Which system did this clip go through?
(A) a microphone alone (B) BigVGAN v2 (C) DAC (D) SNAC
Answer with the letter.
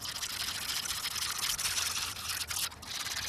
B